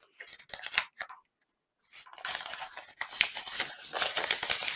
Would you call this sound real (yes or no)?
yes